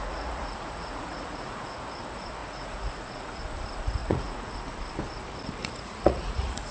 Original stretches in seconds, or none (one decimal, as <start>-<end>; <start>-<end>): 1.8-2.4; 3.4-4.0; 4.5-5.6